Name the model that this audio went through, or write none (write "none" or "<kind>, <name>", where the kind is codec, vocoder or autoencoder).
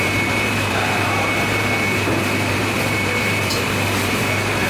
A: vocoder, BigVGAN v2